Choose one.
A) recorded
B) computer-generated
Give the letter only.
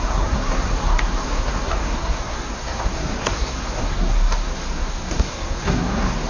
B